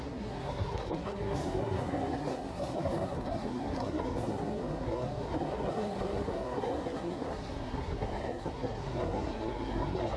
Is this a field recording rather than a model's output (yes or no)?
no